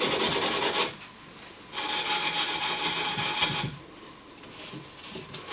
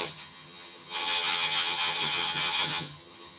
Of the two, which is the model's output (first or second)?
second